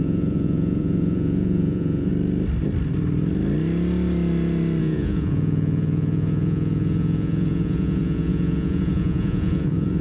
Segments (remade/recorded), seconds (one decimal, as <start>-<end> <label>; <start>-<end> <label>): 0.0-2.1 remade; 2.1-4.8 recorded; 4.8-10.0 remade